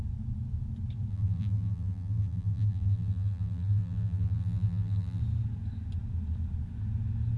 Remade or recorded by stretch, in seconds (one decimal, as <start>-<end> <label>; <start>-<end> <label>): 0.0-1.1 recorded; 1.1-5.2 remade; 5.2-7.4 recorded